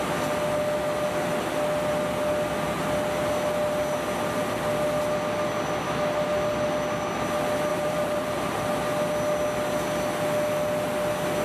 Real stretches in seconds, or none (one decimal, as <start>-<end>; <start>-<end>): 0.0-7.7; 8.6-11.4